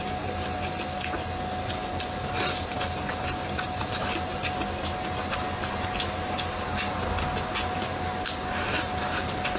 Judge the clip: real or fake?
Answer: real